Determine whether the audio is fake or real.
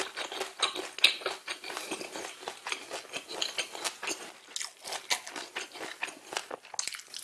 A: real